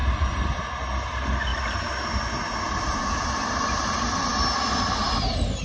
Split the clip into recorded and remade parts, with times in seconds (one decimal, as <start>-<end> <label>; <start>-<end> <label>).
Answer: 0.0-0.6 remade; 0.6-1.5 recorded; 1.5-3.7 remade; 3.7-5.6 recorded